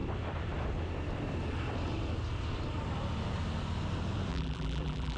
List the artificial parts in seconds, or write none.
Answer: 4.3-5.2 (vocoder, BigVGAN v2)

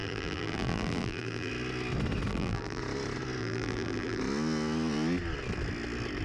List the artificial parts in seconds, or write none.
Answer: 0.0-1.5 (vocoder, BigVGAN v2); 2.3-2.8; 3.4-4.2

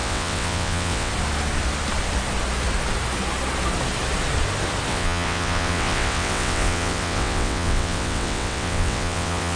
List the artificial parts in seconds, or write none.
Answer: 0.0-1.1 (vocoder, WaveNeXt); 4.9-9.6

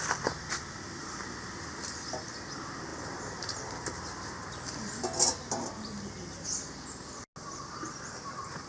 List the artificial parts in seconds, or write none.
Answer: none

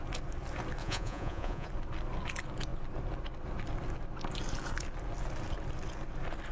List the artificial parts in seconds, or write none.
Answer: 0.8-1.7 (vocoder, Vocos)

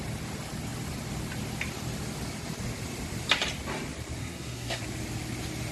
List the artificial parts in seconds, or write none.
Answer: 4.2-4.8 (codec, SNAC)

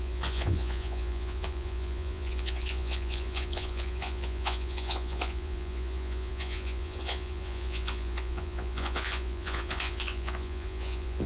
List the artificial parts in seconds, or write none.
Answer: 0.0-11.3 (vocoder, Vocos)